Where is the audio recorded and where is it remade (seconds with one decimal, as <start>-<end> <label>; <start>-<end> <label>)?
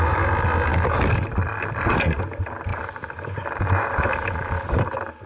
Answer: 0.0-2.7 recorded; 2.7-4.8 remade; 4.8-5.3 recorded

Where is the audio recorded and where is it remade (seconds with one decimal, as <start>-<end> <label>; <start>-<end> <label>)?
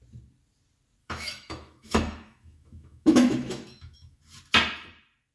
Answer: 0.0-1.0 recorded; 1.0-4.2 remade; 4.2-5.3 recorded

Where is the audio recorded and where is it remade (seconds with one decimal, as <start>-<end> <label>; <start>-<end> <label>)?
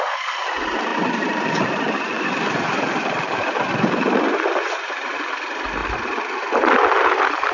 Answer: 0.0-0.9 recorded; 0.9-4.3 remade; 4.3-5.8 recorded; 5.8-6.5 remade; 6.5-7.5 recorded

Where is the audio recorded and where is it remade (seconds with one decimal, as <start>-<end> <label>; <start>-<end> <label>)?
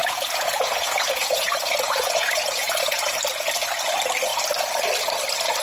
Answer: 0.0-3.2 remade; 3.2-5.6 recorded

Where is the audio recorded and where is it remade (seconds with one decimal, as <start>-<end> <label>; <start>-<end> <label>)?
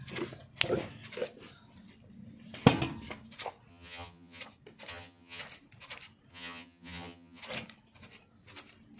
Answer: 0.0-3.7 recorded; 3.7-4.4 remade; 4.4-4.9 recorded; 4.9-5.4 remade; 5.4-6.3 recorded; 6.3-7.4 remade; 7.4-9.0 recorded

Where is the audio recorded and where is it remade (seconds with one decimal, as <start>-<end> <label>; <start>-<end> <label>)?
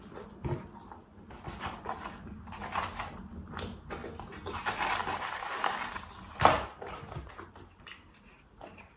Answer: 0.0-9.0 recorded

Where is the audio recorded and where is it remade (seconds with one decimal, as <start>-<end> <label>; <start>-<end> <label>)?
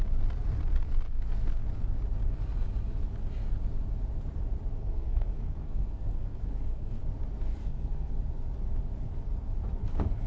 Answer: 0.0-4.8 recorded; 4.8-7.0 remade; 7.0-7.5 recorded; 7.5-8.1 remade; 8.1-9.8 recorded; 9.8-10.3 remade